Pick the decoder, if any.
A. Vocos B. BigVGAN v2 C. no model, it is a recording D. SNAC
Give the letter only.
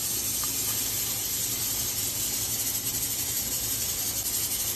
C